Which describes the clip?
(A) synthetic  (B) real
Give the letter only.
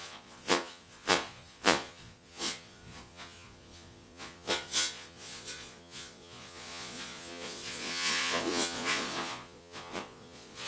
A